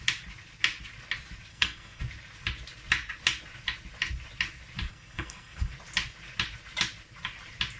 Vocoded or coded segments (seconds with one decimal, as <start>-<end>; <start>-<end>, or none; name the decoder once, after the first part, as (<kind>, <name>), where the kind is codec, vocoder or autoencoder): 1.5-2.0 (codec, SNAC); 4.9-5.7